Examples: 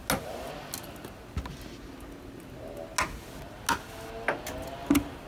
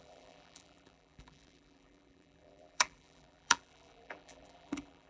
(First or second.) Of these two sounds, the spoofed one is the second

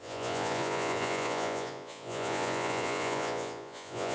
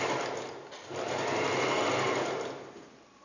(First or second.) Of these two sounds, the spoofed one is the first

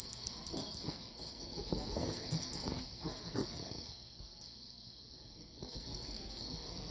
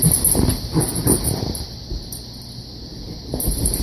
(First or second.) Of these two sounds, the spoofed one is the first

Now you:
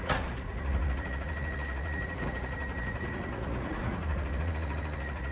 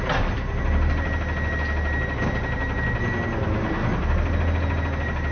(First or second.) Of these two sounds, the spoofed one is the first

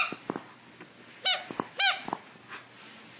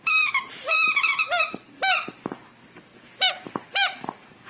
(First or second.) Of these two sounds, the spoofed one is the second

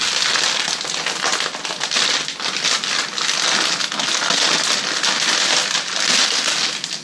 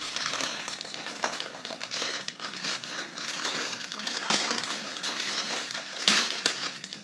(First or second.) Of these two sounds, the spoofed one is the second